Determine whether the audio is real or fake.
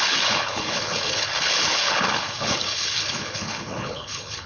fake